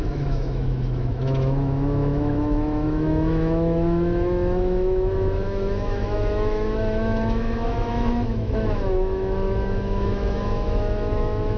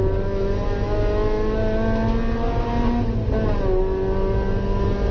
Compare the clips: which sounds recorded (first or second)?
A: second